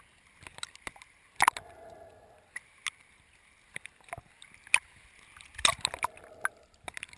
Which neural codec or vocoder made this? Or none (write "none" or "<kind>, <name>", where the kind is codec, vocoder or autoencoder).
none